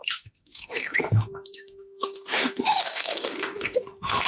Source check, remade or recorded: remade